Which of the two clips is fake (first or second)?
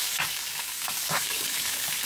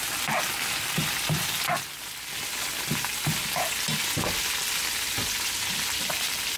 first